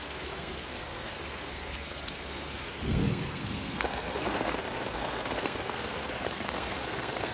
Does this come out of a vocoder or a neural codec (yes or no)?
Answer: yes